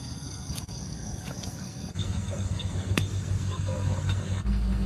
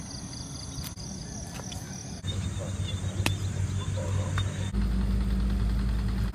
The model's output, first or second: first